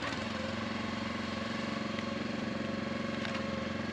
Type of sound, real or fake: fake